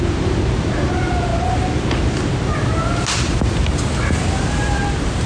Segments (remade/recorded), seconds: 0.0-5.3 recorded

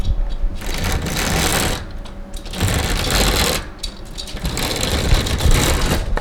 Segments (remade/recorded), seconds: 0.0-6.2 recorded

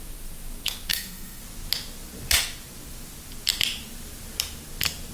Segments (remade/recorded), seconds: 0.0-0.9 recorded; 0.9-1.4 remade; 1.4-5.1 recorded

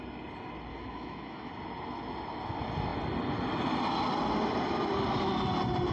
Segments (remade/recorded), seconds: 0.0-0.7 recorded; 0.7-1.5 remade; 1.5-5.9 recorded